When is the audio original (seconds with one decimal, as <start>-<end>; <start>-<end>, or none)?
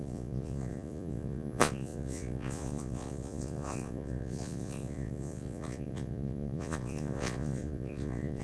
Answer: none